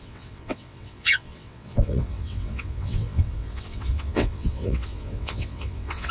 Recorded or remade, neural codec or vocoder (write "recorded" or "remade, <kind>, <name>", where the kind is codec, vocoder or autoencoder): remade, vocoder, WaveNeXt